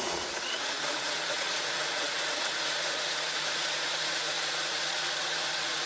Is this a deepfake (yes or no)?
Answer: yes